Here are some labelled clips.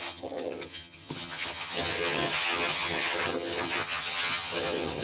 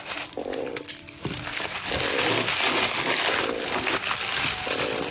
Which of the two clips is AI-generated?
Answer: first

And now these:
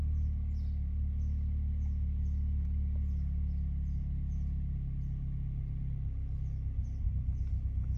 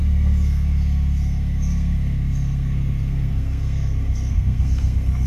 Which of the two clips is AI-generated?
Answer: second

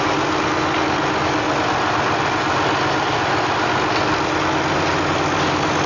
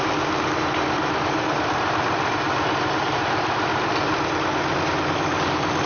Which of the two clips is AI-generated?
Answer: second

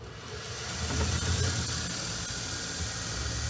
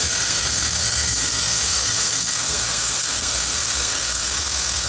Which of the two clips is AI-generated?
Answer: second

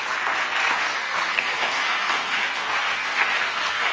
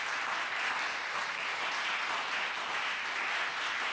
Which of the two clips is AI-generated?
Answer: first